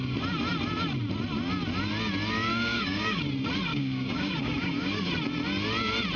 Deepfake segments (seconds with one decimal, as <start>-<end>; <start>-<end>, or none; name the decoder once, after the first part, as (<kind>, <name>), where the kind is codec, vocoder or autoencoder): 2.5-3.2 (codec, DAC); 3.7-5.1